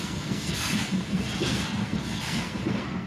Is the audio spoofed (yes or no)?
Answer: yes